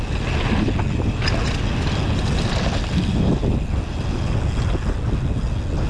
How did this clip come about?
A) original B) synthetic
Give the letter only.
A